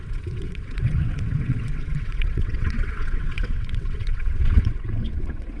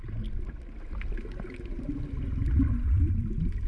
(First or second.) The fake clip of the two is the first